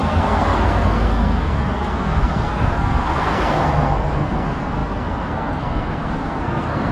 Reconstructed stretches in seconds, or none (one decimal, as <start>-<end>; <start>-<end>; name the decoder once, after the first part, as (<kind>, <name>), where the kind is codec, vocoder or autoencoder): 0.0-6.9 (codec, SNAC)